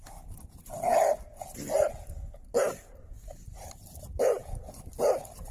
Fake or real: real